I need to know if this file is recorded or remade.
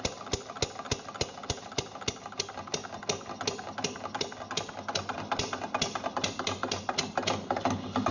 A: recorded